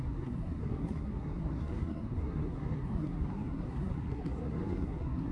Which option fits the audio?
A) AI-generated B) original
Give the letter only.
A